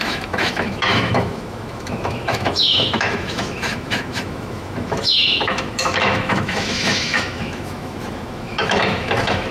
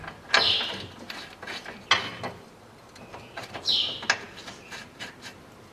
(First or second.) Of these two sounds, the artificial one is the first